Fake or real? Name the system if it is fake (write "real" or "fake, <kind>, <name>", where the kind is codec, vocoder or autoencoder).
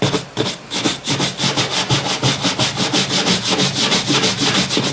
real